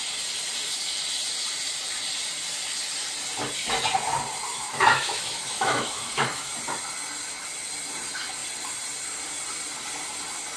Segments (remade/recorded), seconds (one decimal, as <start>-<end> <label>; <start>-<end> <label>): 0.0-4.5 recorded; 4.5-6.5 remade; 6.5-10.6 recorded